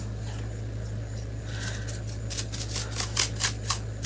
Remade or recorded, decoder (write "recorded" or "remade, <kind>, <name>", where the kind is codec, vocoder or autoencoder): recorded